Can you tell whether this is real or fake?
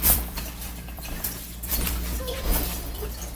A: fake